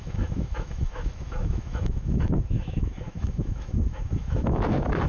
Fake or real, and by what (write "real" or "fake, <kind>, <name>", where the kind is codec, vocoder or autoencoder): fake, autoencoder, DAC-VAE